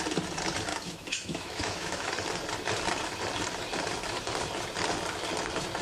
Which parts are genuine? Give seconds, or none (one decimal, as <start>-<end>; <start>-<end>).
0.0-0.7; 2.1-5.8